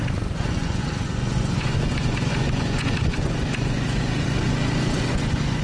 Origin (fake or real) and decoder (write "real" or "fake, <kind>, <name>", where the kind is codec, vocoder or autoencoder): fake, vocoder, Vocos